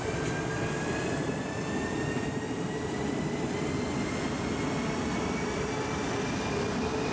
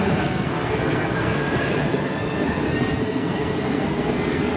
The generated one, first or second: second